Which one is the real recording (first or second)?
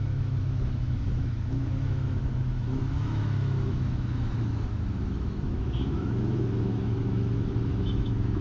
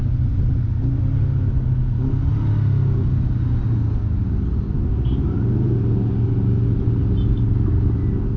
second